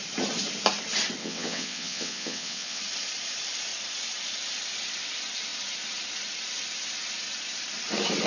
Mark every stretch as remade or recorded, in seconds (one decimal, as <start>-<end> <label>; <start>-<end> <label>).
0.0-1.2 recorded; 1.2-2.8 remade; 2.8-8.3 recorded